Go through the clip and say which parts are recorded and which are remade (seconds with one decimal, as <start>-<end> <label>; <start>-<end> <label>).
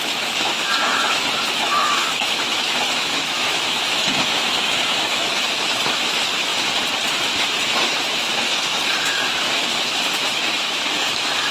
0.0-6.5 remade; 6.5-7.1 recorded; 7.1-11.5 remade